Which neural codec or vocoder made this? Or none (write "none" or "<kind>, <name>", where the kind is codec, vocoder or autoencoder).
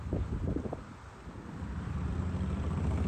vocoder, BigVGAN v2